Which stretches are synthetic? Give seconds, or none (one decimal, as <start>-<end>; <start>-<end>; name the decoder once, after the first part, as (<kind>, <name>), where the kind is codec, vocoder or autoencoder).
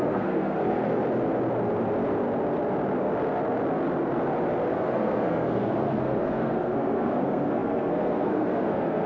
0.0-1.0 (codec, SNAC); 4.7-9.1